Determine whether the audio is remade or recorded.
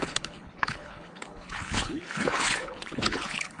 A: remade